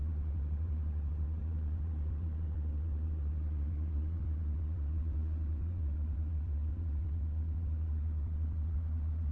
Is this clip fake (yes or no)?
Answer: yes